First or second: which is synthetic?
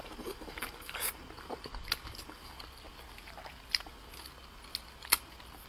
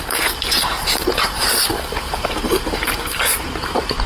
second